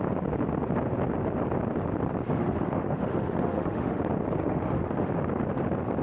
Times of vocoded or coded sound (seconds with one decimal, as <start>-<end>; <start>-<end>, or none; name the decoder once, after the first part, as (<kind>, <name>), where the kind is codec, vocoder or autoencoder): 2.3-4.0 (autoencoder, DAC-VAE); 4.4-5.1